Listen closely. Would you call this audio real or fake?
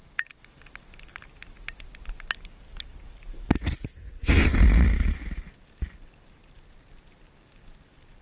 real